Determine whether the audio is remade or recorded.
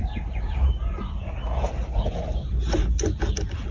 recorded